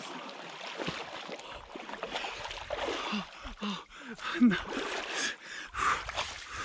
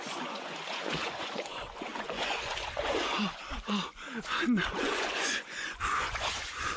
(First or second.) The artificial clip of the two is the second